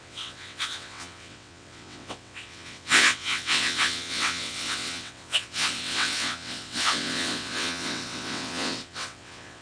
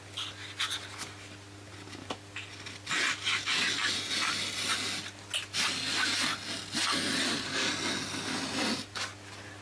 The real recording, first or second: second